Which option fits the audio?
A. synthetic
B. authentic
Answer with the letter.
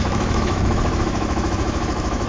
A